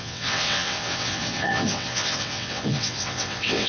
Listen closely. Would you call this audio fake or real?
fake